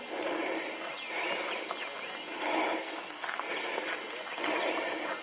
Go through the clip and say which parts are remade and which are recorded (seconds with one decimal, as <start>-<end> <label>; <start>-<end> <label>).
0.0-2.8 recorded; 2.8-3.5 remade; 3.5-5.2 recorded